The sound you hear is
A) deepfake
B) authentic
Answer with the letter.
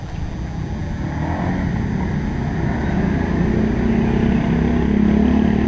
B